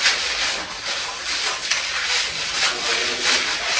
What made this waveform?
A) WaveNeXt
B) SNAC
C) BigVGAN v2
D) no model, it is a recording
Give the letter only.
D